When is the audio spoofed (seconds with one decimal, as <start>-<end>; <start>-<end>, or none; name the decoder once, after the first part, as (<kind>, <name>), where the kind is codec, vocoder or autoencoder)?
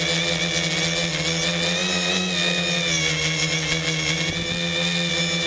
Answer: none